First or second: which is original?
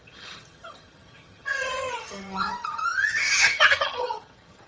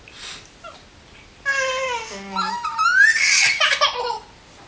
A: second